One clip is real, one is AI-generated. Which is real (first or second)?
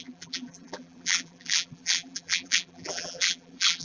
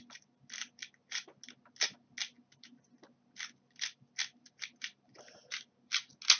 second